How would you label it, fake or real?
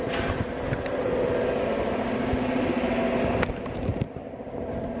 real